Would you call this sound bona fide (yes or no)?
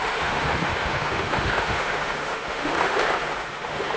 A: no